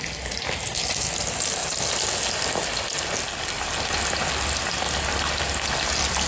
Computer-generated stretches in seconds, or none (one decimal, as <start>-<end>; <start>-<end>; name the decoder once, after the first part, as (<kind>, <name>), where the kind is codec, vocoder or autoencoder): none